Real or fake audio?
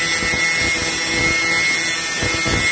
real